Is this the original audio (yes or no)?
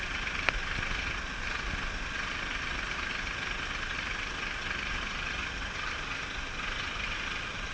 yes